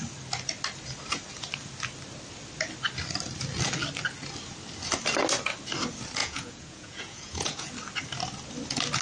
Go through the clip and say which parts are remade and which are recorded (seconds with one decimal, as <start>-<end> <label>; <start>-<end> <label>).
0.0-6.2 recorded; 6.2-7.7 remade; 7.7-9.0 recorded